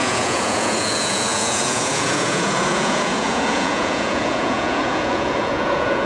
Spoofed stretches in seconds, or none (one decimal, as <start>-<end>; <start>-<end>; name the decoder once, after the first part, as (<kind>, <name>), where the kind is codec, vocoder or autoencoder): 0.0-6.1 (vocoder, Vocos)